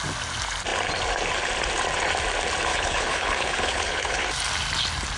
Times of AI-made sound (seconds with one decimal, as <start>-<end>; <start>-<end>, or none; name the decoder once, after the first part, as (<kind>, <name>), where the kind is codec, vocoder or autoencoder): 2.7-4.2 (codec, HILCodec)